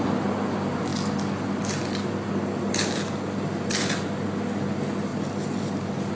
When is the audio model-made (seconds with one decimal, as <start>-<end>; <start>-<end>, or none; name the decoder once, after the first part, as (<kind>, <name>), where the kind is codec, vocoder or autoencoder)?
none